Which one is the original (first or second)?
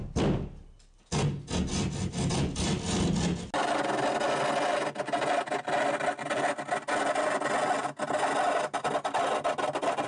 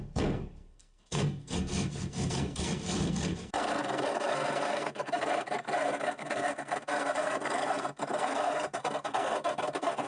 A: first